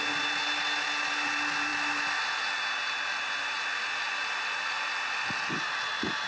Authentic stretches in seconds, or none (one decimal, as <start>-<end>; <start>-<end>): 0.0-6.3